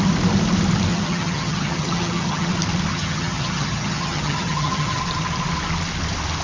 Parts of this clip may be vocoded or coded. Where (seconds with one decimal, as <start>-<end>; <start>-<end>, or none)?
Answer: 0.9-2.5; 2.9-5.0